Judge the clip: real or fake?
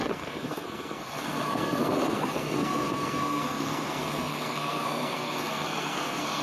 fake